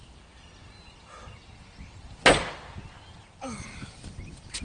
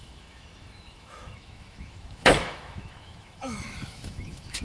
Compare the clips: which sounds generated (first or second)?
second